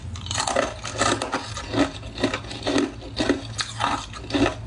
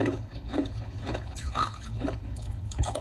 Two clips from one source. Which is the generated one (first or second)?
second